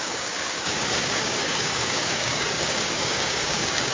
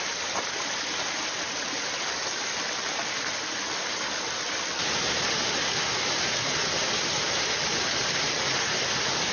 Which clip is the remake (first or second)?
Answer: first